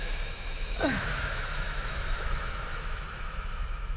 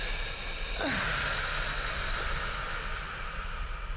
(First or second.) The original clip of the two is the second